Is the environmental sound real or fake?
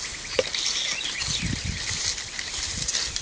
real